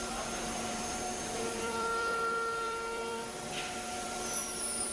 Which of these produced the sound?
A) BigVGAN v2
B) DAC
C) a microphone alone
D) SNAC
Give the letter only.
A